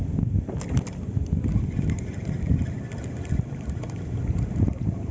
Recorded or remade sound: recorded